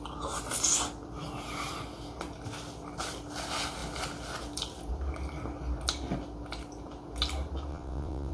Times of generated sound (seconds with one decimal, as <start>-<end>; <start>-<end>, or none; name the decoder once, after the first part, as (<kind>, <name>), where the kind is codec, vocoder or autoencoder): 7.7-8.3 (vocoder, WaveNeXt)